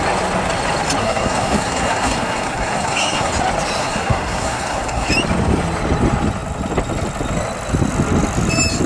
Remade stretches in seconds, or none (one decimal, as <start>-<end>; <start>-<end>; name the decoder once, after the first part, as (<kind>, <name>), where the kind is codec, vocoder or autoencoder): 1.0-3.3 (codec, SNAC); 3.8-5.1